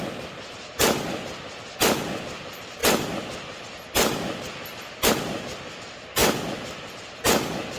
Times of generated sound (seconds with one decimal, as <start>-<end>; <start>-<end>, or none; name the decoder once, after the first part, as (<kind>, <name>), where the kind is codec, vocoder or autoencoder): none

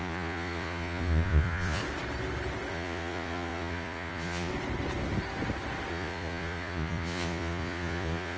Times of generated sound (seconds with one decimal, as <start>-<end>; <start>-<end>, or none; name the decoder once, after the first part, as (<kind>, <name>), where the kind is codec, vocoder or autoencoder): 0.0-1.8 (vocoder, Vocos); 2.7-4.5; 5.9-8.4

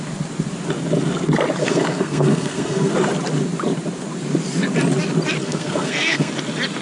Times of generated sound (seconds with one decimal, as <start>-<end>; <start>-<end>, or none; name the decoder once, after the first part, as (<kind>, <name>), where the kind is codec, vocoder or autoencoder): 1.6-2.9 (codec, SNAC); 5.4-6.3

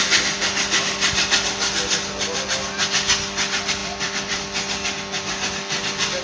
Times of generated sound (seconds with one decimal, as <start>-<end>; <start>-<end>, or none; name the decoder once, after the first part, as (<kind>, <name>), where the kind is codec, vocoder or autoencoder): 3.8-4.4 (vocoder, BigVGAN v2)

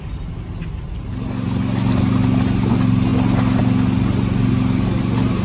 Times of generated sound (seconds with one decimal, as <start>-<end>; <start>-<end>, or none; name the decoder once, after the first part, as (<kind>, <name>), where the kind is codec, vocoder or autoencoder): none

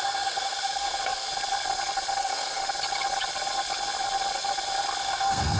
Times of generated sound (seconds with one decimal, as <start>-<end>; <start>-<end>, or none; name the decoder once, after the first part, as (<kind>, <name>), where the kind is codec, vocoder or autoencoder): 0.0-1.3 (codec, SNAC); 2.2-2.6; 5.0-5.6

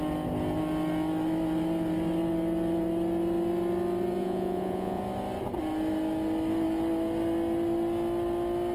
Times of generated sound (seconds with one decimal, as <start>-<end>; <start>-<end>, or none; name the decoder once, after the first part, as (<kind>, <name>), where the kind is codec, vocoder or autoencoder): 4.2-5.0 (vocoder, Vocos)

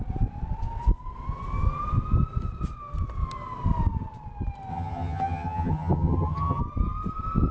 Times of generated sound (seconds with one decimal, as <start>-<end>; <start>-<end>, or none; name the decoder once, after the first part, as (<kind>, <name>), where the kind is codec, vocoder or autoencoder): 4.7-6.6 (vocoder, HiFi-GAN)